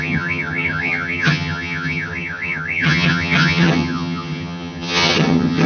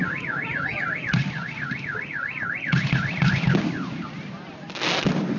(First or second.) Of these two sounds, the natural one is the second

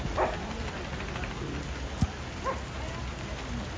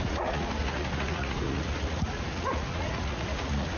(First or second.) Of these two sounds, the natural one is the first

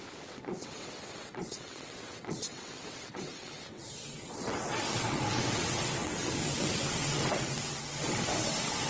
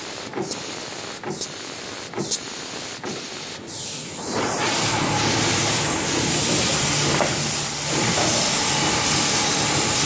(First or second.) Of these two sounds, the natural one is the second